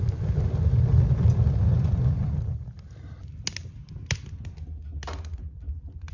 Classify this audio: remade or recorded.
recorded